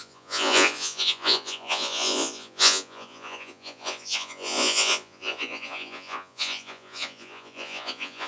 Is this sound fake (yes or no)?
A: yes